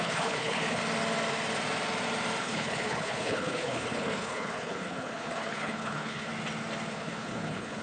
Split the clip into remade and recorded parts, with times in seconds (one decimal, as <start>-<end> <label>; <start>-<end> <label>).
0.0-0.8 remade; 0.8-2.4 recorded; 2.4-6.3 remade; 6.3-6.9 recorded; 6.9-7.8 remade